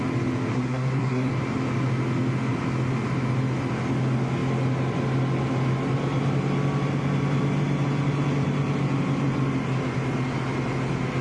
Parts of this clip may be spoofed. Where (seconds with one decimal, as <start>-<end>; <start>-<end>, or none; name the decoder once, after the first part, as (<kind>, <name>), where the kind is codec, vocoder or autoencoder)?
0.5-1.3 (codec, SNAC)

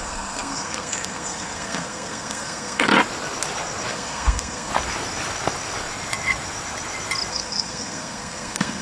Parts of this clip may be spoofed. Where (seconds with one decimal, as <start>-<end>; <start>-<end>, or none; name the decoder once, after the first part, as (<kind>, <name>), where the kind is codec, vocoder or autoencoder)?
0.0-2.9 (codec, SNAC); 3.9-4.7; 7.3-8.8

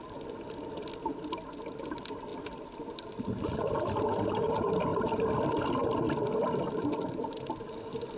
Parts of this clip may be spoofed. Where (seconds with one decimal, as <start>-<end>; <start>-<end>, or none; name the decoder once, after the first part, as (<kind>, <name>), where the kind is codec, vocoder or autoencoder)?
none

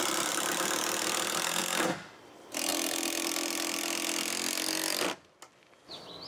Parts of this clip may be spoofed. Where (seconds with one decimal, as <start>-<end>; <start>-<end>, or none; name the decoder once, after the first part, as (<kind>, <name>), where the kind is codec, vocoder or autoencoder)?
none